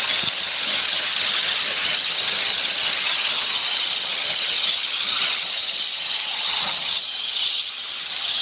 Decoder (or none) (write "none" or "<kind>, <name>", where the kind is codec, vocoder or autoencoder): vocoder, HiFi-GAN